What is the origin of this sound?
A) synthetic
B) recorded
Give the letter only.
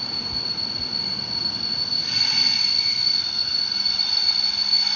B